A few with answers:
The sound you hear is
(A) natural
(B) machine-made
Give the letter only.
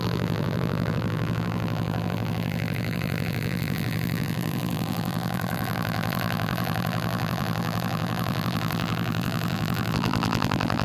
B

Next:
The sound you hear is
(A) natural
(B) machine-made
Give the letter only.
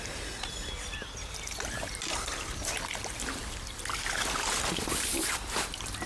A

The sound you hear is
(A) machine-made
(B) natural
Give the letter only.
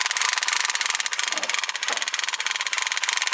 B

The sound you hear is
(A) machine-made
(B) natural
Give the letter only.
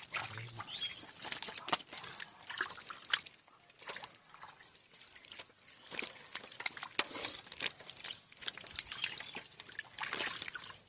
B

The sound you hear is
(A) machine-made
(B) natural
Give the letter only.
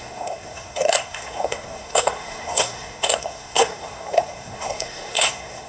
A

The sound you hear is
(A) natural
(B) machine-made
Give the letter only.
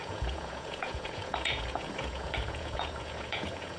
B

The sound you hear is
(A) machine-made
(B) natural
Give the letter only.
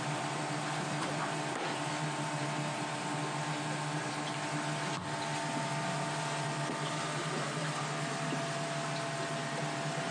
B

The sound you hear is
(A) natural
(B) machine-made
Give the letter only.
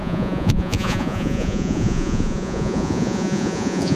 B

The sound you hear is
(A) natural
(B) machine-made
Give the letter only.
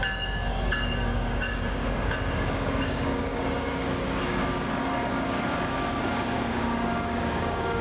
B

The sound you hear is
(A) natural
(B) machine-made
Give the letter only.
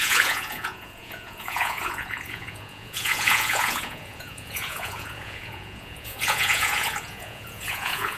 B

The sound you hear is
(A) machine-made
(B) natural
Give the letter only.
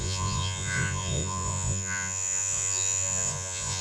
A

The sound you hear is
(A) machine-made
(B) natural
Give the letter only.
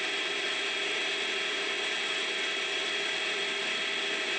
B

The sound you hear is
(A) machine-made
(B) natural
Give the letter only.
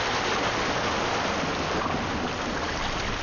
B